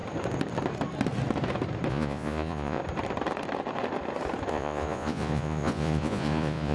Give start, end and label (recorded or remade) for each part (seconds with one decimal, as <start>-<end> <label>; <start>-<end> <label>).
0.0-1.9 recorded; 1.9-2.8 remade; 2.8-4.5 recorded; 4.5-6.7 remade

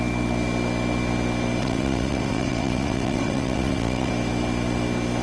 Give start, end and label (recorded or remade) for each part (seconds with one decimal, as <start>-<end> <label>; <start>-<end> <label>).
0.0-1.6 recorded; 1.6-4.1 remade; 4.1-5.2 recorded

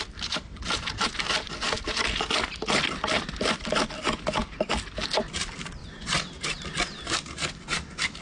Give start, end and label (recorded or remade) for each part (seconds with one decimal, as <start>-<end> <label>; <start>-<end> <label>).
0.0-5.8 recorded; 5.8-6.3 remade; 6.3-8.2 recorded

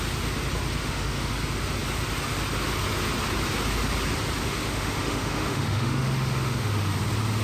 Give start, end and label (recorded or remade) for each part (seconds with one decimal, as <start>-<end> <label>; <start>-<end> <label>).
0.0-0.8 recorded; 0.8-1.3 remade; 1.3-4.4 recorded; 4.4-6.9 remade; 6.9-7.4 recorded

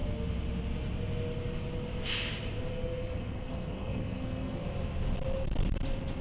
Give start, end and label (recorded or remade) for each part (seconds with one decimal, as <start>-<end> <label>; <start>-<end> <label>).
0.0-2.7 recorded; 2.7-4.7 remade; 4.7-6.2 recorded

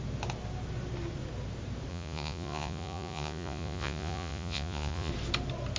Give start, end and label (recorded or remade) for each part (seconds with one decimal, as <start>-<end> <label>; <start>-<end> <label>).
0.0-1.9 recorded; 1.9-5.1 remade; 5.1-5.8 recorded